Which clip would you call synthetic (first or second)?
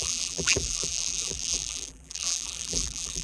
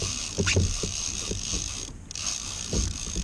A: first